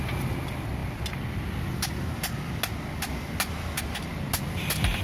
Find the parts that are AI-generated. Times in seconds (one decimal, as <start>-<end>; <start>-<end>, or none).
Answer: none